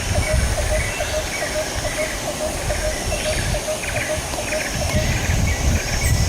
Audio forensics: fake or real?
real